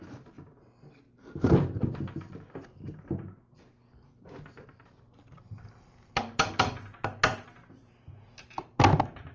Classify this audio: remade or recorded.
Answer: recorded